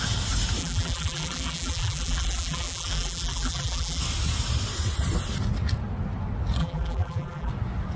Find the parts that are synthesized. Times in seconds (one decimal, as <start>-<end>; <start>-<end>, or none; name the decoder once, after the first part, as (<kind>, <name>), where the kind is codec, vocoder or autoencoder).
0.6-4.0 (vocoder, BigVGAN v2); 6.6-7.5

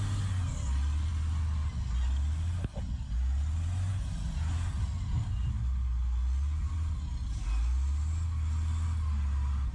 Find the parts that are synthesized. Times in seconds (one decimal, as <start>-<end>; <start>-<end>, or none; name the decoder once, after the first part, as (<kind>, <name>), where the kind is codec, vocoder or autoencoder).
none

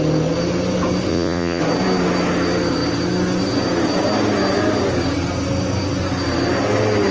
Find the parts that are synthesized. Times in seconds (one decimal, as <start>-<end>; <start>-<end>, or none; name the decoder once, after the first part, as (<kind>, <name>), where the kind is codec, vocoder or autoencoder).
1.1-1.6 (vocoder, Vocos)

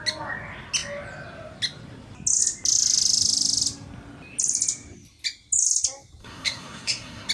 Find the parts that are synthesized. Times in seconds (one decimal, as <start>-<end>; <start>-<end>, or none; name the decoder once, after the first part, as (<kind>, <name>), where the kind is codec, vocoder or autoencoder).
6.2-7.3 (codec, SNAC)